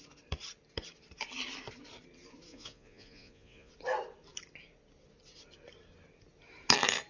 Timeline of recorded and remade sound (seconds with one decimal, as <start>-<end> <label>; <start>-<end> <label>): 0.0-2.5 recorded; 2.5-3.7 remade; 3.7-7.1 recorded